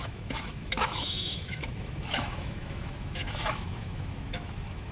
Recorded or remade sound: remade